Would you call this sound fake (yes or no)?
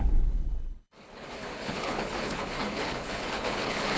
yes